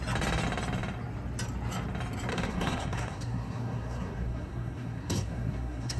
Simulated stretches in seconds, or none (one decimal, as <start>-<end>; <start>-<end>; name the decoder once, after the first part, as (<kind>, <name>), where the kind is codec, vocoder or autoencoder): 2.3-6.0 (codec, SNAC)